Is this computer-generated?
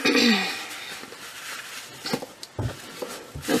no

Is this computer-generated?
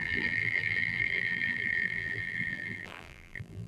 yes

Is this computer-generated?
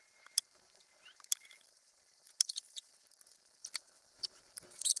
yes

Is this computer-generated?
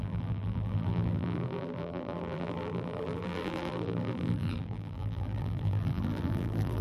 yes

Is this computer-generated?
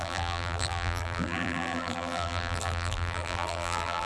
yes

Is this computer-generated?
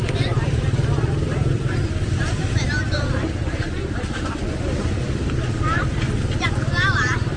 yes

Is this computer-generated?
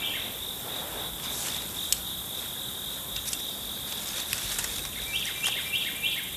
no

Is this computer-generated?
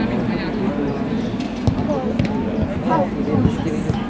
no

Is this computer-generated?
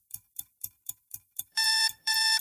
yes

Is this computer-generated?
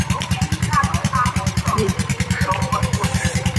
yes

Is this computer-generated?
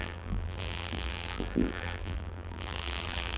yes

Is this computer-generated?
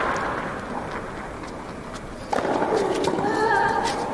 no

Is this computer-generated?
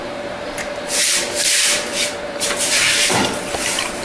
yes